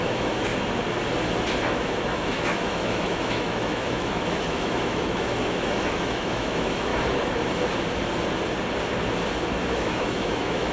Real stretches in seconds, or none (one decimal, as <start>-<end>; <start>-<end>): 0.5-1.7; 6.9-9.6